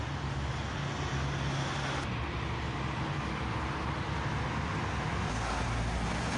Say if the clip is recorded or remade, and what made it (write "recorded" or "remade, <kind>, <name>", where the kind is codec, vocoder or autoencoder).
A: recorded